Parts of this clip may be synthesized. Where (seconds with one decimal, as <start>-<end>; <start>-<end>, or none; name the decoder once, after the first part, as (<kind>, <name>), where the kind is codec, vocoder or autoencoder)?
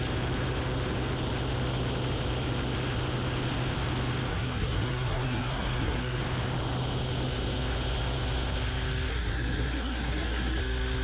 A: 4.3-6.2 (codec, SNAC); 9.1-10.6